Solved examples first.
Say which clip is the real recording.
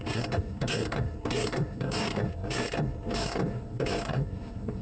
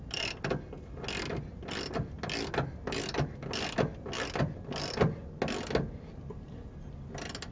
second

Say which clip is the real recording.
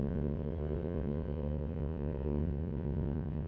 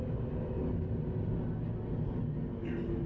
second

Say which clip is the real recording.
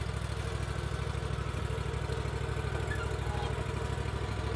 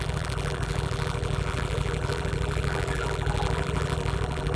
first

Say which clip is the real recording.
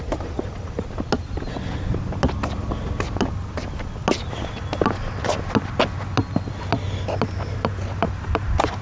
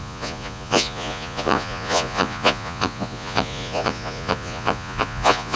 first